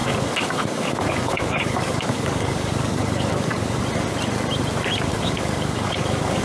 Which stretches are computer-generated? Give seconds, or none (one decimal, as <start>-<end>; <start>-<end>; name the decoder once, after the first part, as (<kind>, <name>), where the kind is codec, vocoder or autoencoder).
0.0-3.8 (codec, DAC); 5.1-6.4